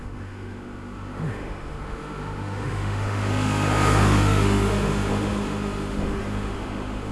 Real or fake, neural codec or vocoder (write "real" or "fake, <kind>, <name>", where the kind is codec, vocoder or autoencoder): fake, autoencoder, DAC-VAE